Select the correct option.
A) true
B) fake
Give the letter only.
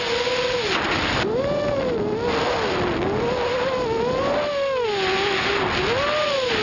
A